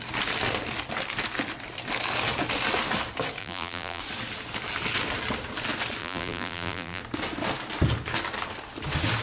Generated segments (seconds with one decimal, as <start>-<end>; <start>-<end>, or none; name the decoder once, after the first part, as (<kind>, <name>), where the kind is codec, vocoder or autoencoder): 3.4-4.0 (vocoder, BigVGAN v2); 6.0-7.0